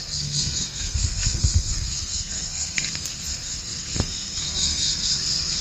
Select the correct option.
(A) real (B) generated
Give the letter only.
B